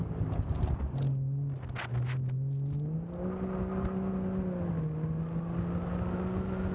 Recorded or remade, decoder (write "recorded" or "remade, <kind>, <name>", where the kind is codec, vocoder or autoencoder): recorded